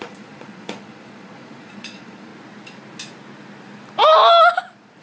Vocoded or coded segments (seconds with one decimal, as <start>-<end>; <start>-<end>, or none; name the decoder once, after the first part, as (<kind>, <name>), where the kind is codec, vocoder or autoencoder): 0.0-2.3 (vocoder, Vocos)